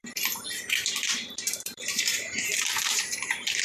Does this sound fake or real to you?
fake